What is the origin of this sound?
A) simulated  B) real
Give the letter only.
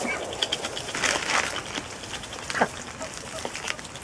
B